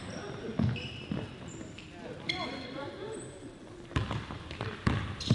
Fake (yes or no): no